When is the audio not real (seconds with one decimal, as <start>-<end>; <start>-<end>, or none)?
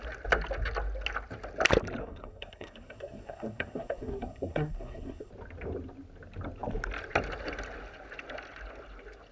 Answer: 2.0-5.3